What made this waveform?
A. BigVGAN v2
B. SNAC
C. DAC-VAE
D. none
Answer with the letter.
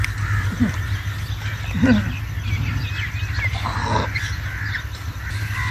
D